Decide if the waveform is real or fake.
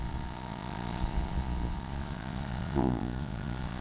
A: fake